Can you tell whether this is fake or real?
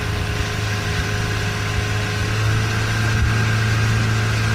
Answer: real